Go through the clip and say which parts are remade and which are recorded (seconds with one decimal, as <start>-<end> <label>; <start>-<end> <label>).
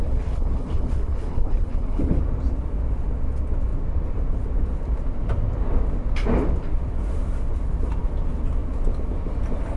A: 0.0-2.2 remade; 2.2-9.8 recorded